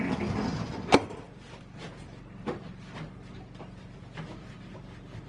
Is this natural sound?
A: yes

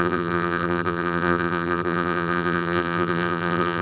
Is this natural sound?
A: no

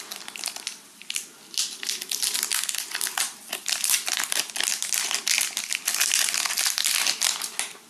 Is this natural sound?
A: yes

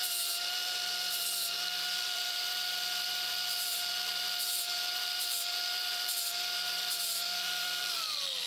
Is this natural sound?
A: no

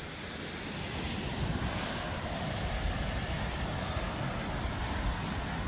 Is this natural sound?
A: yes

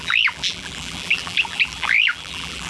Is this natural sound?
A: no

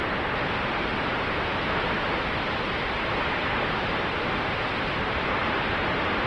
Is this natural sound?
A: yes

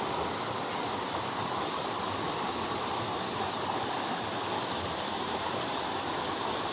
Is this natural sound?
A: yes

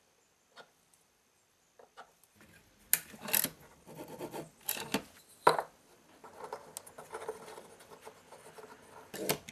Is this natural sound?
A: yes